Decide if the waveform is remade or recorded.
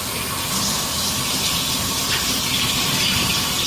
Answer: remade